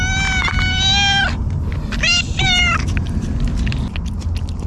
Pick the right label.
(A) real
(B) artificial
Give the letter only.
A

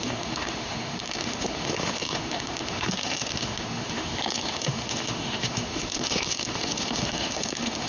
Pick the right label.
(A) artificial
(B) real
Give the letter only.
A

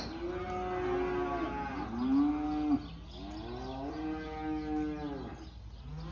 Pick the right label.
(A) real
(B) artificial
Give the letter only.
A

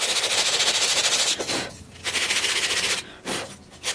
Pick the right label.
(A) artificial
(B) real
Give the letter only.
B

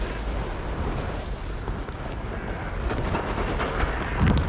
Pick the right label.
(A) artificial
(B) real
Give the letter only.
B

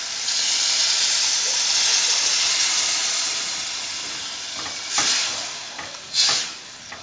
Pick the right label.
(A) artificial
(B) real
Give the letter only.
B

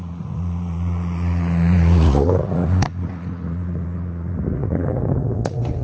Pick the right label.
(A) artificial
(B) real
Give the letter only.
A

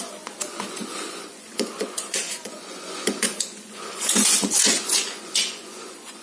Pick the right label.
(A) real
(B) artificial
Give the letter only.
B